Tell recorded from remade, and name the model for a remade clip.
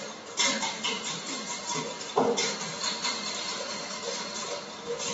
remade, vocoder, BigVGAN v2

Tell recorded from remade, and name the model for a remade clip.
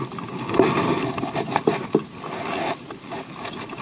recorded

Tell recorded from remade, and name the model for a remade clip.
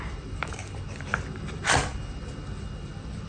recorded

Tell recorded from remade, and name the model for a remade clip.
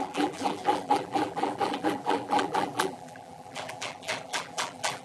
remade, vocoder, BigVGAN v2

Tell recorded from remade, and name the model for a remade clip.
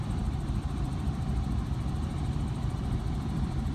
remade, vocoder, BigVGAN v2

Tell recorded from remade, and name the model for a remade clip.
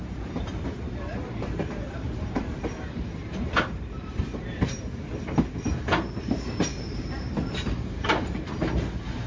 remade, vocoder, BigVGAN v2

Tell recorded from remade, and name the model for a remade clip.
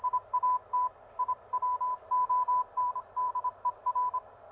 remade, vocoder, BigVGAN v2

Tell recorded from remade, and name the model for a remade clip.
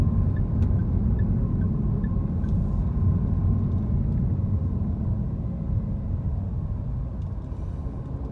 recorded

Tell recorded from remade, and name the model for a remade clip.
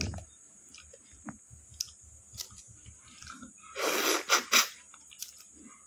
recorded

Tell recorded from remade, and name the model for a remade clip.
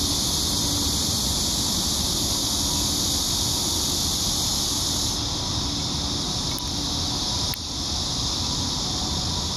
recorded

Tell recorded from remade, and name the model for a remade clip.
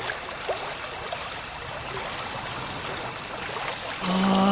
recorded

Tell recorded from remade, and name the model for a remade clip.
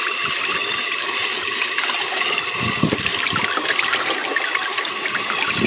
recorded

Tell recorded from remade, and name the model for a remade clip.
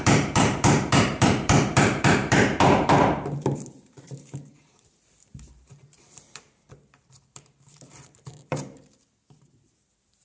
remade, vocoder, BigVGAN v2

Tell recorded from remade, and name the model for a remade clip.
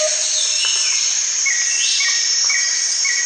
recorded